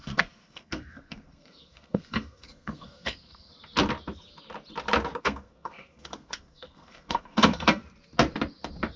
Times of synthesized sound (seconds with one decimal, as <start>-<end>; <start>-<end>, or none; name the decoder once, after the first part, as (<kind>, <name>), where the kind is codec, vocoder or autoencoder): 0.0-3.5 (codec, SNAC); 5.2-7.8